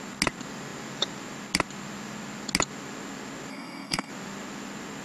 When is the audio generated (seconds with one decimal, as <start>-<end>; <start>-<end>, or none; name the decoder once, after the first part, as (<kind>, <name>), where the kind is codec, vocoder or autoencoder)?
3.5-4.1 (codec, SNAC)